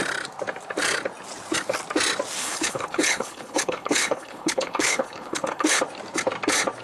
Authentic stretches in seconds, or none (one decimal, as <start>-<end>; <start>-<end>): 0.0-2.4; 5.8-6.8